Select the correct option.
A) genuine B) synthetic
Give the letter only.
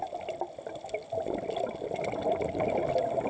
A